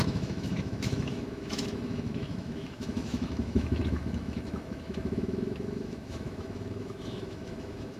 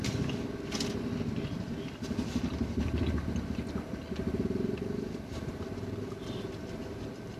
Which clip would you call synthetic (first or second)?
first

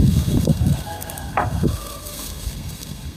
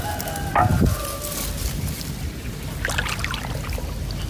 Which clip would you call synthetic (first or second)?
first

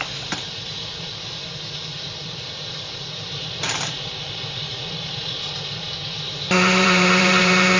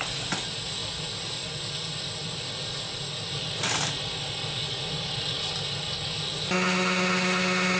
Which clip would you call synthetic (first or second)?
first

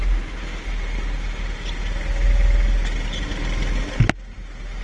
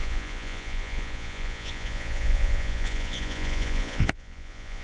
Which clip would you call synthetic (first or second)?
second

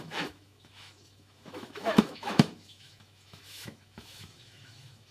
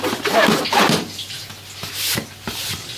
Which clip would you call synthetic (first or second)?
first